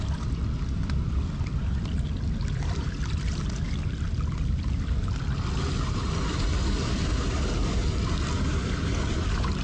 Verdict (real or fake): real